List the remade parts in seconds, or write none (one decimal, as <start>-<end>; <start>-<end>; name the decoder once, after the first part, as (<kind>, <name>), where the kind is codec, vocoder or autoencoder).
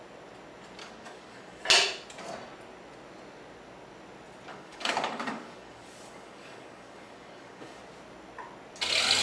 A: 0.8-1.6 (codec, DAC); 4.5-7.8